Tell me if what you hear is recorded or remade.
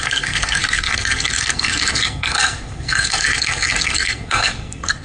remade